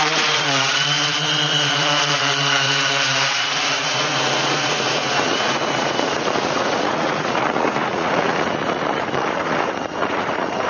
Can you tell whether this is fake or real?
fake